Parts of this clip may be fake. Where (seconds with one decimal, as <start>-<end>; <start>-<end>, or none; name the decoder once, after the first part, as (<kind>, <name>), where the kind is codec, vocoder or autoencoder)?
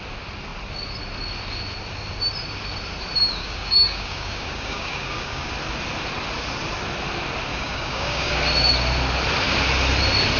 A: 3.4-5.5 (codec, DAC); 7.5-8.3